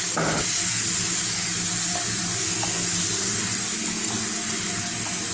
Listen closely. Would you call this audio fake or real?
real